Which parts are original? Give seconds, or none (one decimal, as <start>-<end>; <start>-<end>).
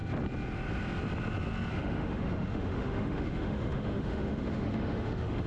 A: 0.0-1.7